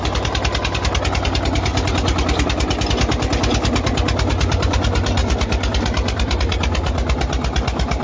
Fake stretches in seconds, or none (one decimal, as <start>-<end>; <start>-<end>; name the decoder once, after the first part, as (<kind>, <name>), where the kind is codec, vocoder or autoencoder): 5.2-6.4 (vocoder, BigVGAN v2)